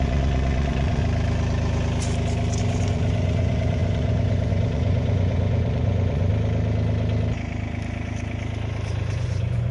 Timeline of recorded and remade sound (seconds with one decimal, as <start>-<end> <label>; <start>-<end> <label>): 0.0-1.0 remade; 1.0-2.6 recorded; 2.6-6.3 remade; 6.3-8.9 recorded; 8.9-9.7 remade